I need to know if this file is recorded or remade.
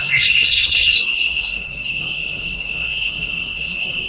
remade